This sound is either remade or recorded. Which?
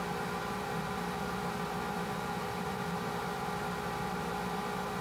recorded